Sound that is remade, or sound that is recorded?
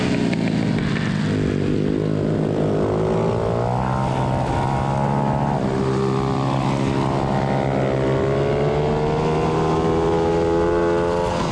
recorded